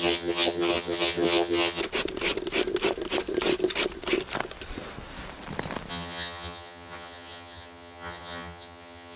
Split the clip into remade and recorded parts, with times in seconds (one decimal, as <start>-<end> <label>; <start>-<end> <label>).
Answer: 0.0-1.8 remade; 1.8-5.9 recorded; 5.9-9.2 remade